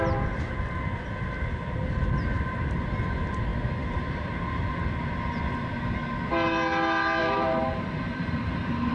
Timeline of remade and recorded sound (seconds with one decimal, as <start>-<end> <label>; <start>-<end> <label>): 0.0-7.2 recorded; 7.2-8.9 remade